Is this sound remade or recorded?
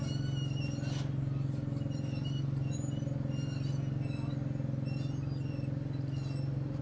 recorded